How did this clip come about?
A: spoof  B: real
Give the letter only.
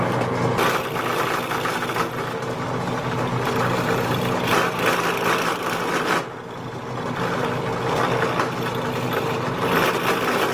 B